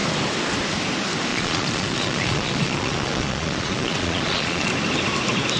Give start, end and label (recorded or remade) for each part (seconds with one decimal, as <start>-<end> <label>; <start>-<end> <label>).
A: 0.0-1.3 recorded; 1.3-4.7 remade; 4.7-5.6 recorded